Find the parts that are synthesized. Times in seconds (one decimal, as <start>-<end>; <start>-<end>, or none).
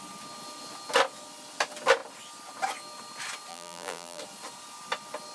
3.5-4.2